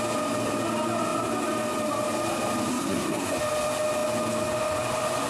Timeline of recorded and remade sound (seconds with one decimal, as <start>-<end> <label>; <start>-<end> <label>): 0.0-2.7 recorded; 2.7-3.4 remade; 3.4-5.3 recorded